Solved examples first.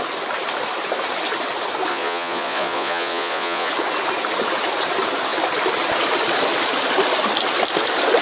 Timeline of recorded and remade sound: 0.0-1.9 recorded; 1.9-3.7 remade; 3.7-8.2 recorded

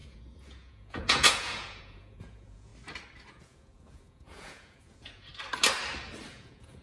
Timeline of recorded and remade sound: 0.0-2.7 remade; 2.7-3.3 recorded; 3.3-5.3 remade; 5.3-6.3 recorded; 6.3-6.8 remade

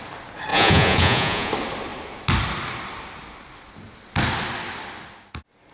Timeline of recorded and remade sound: 0.0-0.5 recorded; 0.5-1.5 remade; 1.5-5.7 recorded